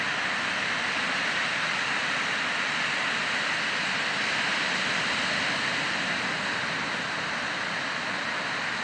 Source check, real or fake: real